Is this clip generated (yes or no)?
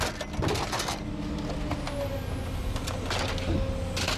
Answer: no